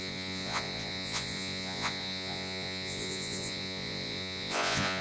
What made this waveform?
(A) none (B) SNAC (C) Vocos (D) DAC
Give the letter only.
C